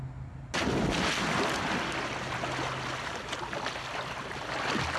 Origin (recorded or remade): recorded